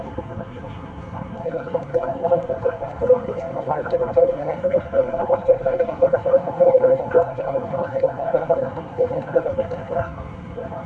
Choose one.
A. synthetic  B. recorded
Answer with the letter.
A